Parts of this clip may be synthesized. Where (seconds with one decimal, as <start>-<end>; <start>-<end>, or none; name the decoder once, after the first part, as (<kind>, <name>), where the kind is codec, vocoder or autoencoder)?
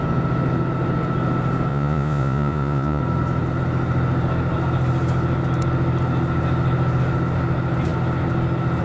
1.7-3.0 (vocoder, Vocos)